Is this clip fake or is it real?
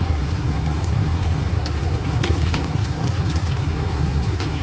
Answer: fake